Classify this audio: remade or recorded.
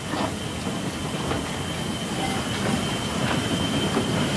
recorded